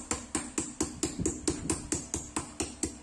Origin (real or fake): real